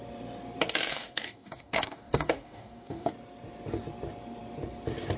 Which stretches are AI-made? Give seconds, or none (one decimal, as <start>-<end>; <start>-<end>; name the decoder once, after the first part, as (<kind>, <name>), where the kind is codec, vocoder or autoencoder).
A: 0.9-3.1 (codec, DAC)